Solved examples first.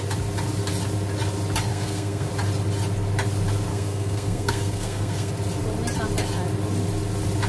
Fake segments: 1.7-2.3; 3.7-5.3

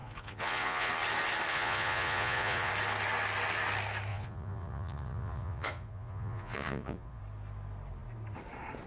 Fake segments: 0.0-0.9; 1.5-2.7; 4.1-7.2

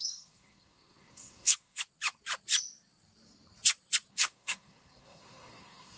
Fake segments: 0.0-1.8; 4.1-6.0